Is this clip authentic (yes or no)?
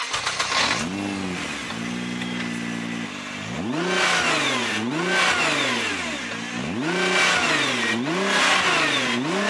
yes